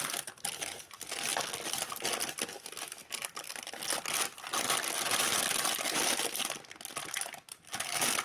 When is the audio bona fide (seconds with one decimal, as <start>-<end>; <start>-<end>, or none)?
0.0-8.2